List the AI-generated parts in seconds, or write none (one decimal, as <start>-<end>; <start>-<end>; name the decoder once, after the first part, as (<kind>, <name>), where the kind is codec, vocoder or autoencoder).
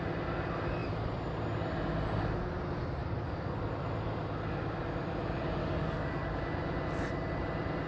3.0-3.6 (codec, DAC); 5.6-6.4